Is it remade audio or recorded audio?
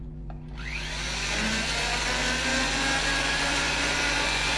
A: remade